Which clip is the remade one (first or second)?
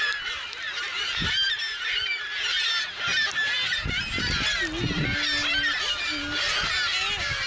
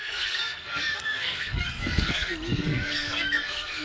second